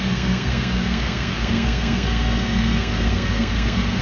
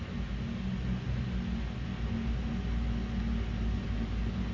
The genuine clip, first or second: second